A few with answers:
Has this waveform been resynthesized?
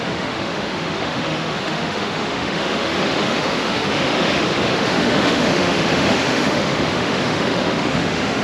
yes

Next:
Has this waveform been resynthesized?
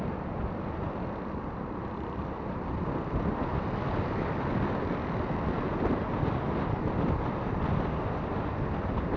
no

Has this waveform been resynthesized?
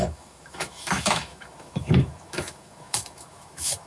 yes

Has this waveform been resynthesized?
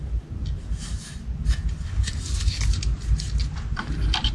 no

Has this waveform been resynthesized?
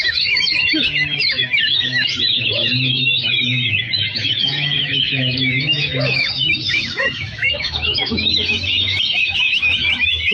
yes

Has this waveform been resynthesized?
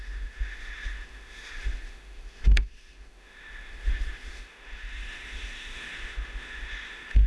yes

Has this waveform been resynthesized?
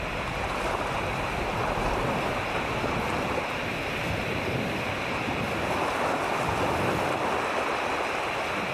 no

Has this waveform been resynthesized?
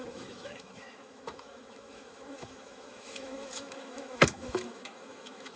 yes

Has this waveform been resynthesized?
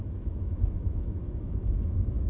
yes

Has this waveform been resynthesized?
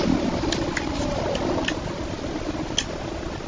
no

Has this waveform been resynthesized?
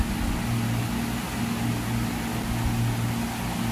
no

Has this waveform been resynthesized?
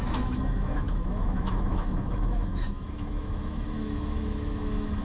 yes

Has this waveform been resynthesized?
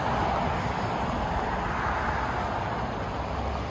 no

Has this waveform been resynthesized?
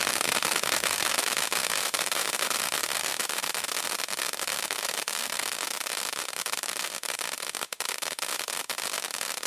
yes